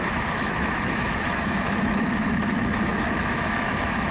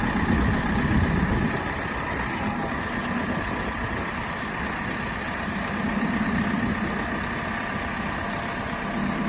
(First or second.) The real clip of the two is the second